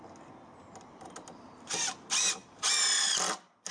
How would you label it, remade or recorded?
recorded